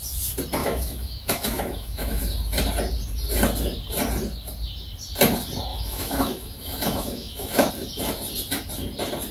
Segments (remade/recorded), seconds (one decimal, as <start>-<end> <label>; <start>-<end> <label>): 0.0-0.6 recorded; 0.6-2.2 remade; 2.2-5.7 recorded; 5.7-7.7 remade; 7.7-9.3 recorded